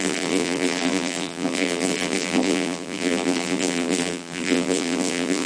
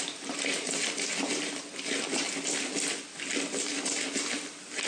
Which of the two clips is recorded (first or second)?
second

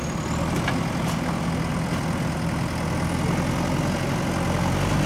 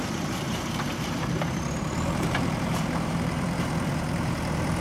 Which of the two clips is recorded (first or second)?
first